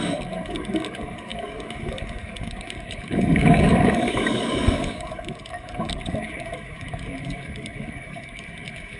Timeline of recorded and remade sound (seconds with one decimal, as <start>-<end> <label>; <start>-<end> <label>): 0.0-9.0 remade